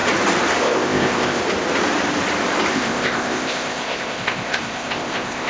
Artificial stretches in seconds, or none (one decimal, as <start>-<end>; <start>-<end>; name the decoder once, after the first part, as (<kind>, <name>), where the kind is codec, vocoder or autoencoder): 0.6-1.4 (codec, ZipCodec); 2.7-5.5